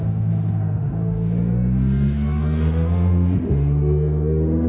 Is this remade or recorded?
remade